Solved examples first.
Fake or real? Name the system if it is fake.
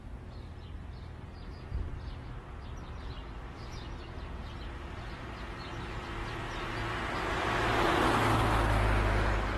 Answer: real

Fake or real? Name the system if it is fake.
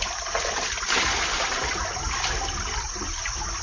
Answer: real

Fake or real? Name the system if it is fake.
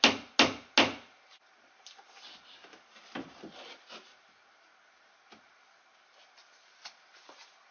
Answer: real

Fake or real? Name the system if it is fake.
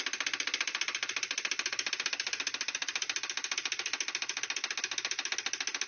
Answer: real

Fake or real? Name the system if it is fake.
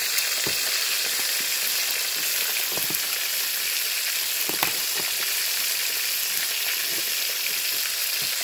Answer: real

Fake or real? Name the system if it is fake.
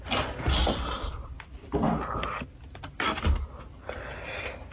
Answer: real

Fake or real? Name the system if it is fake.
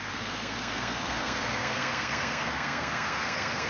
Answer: fake, codec, SNAC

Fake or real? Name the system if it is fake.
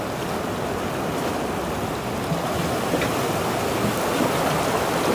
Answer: real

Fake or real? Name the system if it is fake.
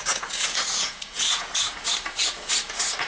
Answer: fake, vocoder, Vocos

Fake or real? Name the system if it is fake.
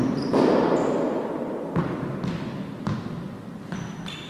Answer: real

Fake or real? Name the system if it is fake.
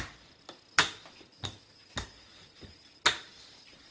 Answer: real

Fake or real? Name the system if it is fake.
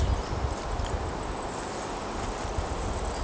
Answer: real